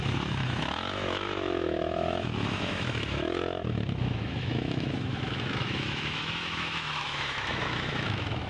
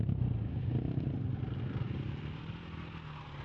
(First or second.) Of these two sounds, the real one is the second